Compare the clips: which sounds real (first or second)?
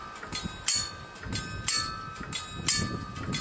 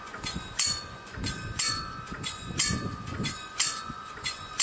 first